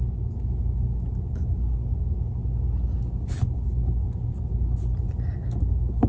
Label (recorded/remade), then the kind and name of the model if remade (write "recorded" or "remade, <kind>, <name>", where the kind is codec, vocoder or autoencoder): recorded